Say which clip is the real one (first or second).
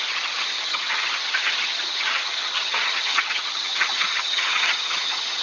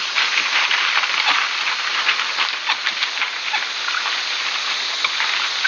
second